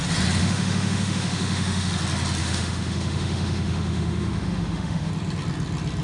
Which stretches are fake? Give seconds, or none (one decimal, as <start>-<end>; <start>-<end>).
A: 0.4-1.9; 2.4-5.1

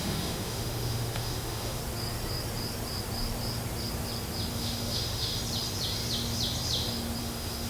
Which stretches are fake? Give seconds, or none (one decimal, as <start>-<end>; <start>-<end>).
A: 0.0-1.8; 4.5-5.3; 7.2-7.7

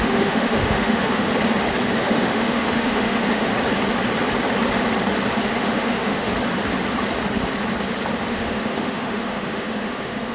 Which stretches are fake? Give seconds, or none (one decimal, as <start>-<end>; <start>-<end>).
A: 0.0-1.3; 2.0-3.5; 5.4-6.3; 8.3-10.3

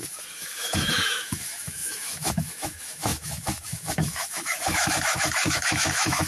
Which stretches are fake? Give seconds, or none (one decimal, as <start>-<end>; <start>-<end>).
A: 0.0-6.3

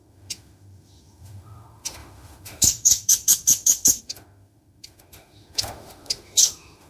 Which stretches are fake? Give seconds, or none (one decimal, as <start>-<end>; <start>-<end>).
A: 0.0-6.9

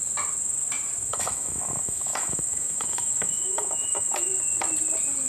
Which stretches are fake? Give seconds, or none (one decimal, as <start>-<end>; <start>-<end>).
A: 1.1-4.3

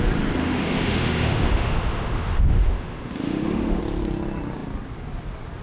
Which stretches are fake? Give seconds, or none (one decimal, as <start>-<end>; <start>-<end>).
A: 0.4-3.8

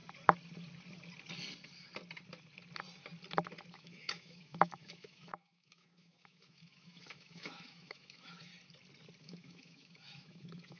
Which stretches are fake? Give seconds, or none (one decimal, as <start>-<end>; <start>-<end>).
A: 3.7-8.5; 9.2-10.8